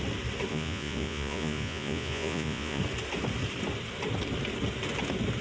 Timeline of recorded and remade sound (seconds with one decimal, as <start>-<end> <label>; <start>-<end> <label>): 0.0-0.5 recorded; 0.5-2.8 remade; 2.8-5.4 recorded